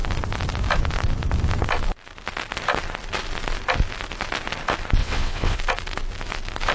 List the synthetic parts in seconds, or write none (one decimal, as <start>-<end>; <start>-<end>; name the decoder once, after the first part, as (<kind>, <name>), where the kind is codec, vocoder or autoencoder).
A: 5.0-5.6 (vocoder, WaveNeXt)